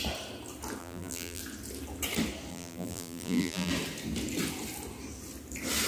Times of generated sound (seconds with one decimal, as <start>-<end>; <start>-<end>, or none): 0.8-1.4; 2.5-3.7